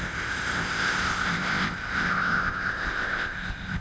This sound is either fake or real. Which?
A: fake